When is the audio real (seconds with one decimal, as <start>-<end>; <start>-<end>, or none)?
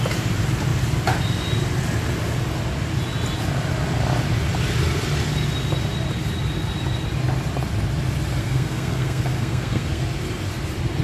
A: 0.0-8.4; 10.0-11.0